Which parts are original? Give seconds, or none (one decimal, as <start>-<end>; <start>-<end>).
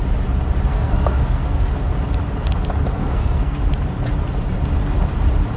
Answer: 0.0-0.7; 1.7-2.9; 3.6-5.6